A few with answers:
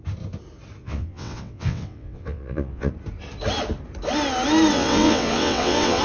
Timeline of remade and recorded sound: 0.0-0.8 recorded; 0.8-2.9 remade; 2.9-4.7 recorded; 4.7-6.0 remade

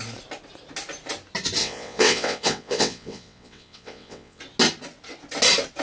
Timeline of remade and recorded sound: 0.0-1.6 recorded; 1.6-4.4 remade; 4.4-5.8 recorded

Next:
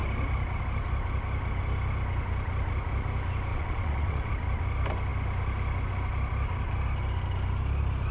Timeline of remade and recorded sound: 0.0-3.5 recorded; 3.5-4.3 remade; 4.3-8.1 recorded

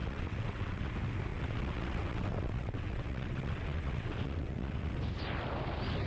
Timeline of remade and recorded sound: 0.0-0.9 remade; 0.9-1.3 recorded; 1.3-5.0 remade; 5.0-6.1 recorded

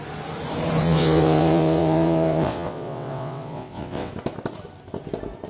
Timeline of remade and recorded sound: 0.0-0.8 recorded; 0.8-4.1 remade; 4.1-5.5 recorded

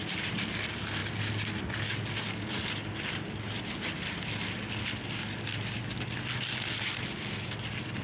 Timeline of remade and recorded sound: 0.0-8.0 recorded

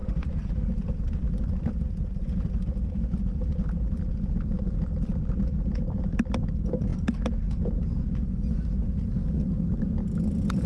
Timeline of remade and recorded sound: 0.0-10.7 recorded